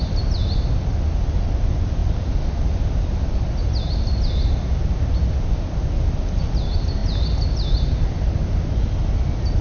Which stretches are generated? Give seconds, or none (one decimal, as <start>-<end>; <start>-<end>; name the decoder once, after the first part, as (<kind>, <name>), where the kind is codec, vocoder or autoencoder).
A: none